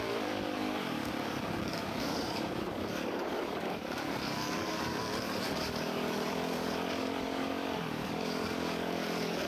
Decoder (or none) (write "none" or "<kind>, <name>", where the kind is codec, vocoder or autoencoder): codec, DAC